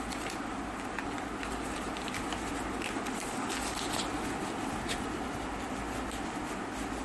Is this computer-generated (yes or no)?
no